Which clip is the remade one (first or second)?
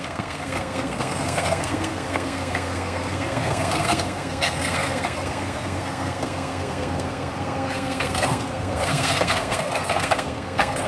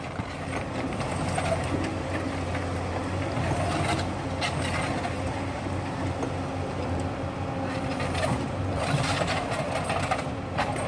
first